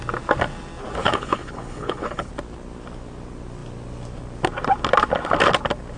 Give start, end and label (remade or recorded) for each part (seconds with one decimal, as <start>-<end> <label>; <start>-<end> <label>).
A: 0.0-1.0 recorded; 1.0-2.3 remade; 2.3-6.0 recorded